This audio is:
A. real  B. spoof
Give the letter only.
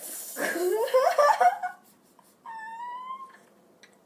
A